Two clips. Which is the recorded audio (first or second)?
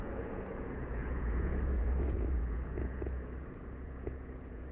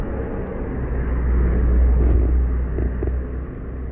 second